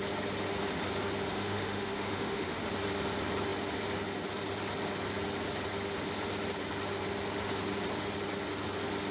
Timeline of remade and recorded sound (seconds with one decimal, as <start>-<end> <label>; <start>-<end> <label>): 0.0-1.3 recorded; 1.3-2.7 remade; 2.7-9.1 recorded